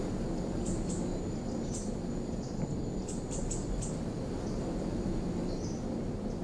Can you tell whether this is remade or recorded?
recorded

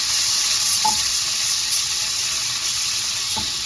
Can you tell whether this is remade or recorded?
remade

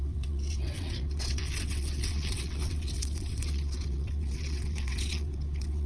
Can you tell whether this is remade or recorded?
remade